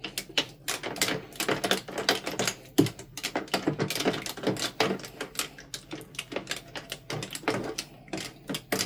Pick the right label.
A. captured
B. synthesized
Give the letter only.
A